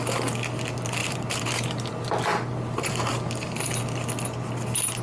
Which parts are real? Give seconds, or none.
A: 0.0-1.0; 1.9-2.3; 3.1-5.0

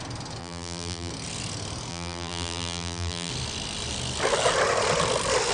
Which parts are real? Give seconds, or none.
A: 0.0-0.4; 1.1-1.9; 3.3-5.5

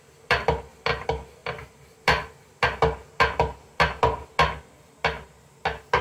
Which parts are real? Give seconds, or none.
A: 0.0-6.0

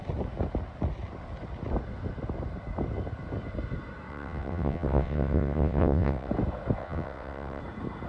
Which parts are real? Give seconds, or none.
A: 0.0-4.1; 6.3-6.8; 7.6-8.1

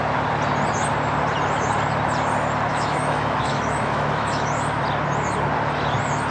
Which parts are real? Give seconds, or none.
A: 0.0-2.7; 4.5-6.3